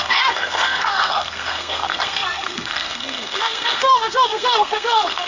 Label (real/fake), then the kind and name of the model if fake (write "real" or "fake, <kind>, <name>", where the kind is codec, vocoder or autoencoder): fake, codec, SNAC